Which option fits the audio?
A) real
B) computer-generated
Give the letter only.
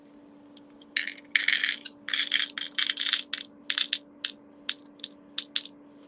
A